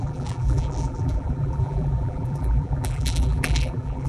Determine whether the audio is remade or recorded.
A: remade